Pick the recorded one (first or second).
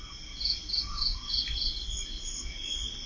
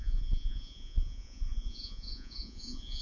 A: first